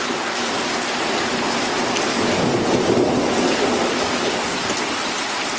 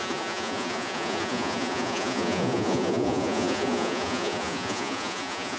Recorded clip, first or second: first